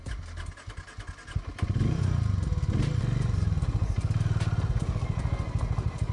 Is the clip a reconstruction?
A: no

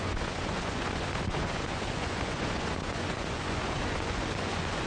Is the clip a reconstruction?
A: yes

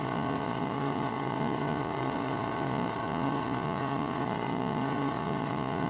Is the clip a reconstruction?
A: yes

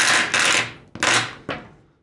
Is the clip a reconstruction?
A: no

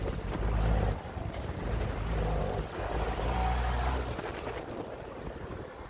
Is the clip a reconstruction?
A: no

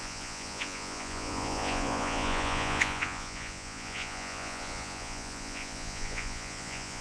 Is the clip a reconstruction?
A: yes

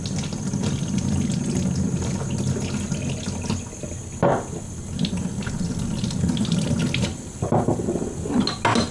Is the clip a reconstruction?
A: no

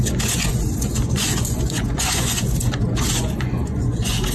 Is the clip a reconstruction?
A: yes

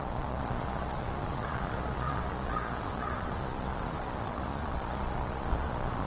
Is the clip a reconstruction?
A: yes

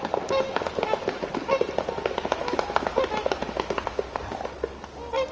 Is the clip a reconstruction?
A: no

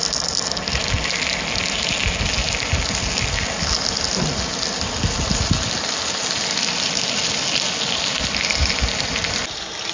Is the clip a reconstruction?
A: no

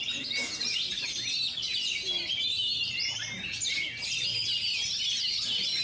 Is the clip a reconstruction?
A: no